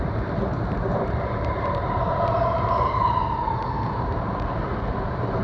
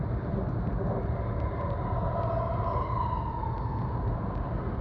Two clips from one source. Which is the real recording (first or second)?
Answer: second